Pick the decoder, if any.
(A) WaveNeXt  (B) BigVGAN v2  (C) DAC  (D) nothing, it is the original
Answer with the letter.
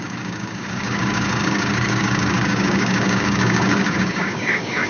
C